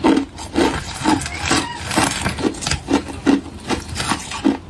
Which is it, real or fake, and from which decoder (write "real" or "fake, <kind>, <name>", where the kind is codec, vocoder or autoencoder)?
real